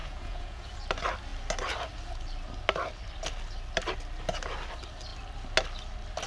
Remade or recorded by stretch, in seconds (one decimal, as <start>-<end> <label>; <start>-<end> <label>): 0.0-0.7 remade; 0.7-6.3 recorded